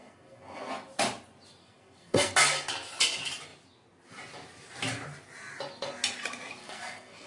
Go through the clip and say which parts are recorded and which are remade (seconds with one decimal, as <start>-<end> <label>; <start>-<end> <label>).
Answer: 0.0-0.7 remade; 0.7-1.6 recorded; 1.6-2.3 remade; 2.3-6.6 recorded; 6.6-7.3 remade